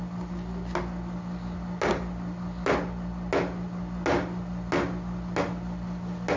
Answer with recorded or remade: recorded